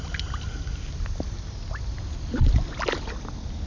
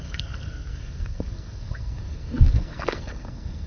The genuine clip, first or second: first